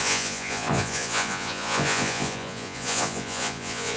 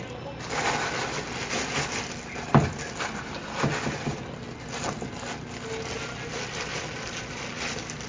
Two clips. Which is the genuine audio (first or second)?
second